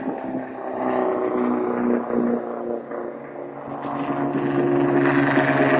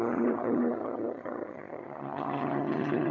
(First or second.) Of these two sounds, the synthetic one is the second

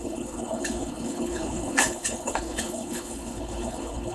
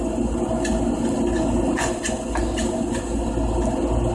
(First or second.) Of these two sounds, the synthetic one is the first